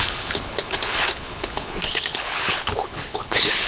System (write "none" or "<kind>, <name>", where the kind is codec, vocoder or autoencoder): codec, HILCodec